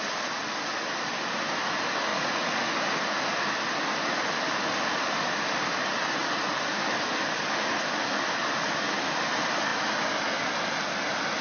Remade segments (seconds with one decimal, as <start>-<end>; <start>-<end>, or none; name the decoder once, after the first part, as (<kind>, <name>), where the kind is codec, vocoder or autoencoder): 2.1-2.7 (vocoder, Vocos)